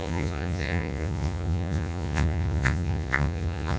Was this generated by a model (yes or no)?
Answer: yes